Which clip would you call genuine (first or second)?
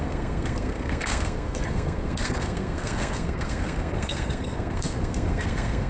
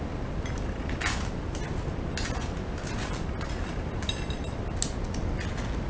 second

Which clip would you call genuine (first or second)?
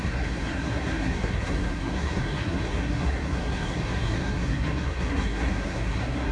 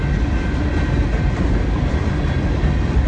second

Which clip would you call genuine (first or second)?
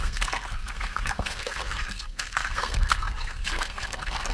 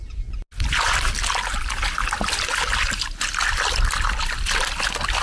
second